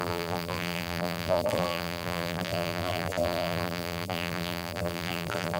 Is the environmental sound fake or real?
fake